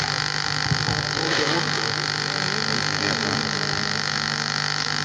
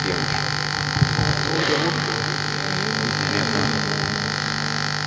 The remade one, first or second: first